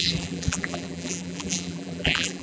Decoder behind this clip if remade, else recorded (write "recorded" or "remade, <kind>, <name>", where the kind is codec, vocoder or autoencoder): remade, vocoder, BigVGAN v2